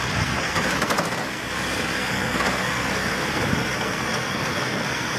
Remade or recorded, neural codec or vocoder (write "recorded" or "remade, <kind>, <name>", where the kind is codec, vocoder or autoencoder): remade, codec, SNAC